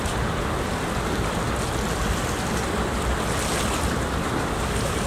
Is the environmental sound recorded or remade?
recorded